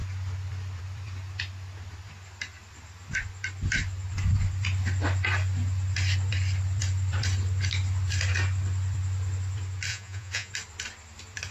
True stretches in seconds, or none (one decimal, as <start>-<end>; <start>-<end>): 0.0-9.9; 10.5-11.5